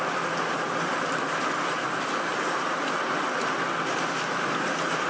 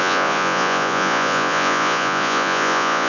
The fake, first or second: second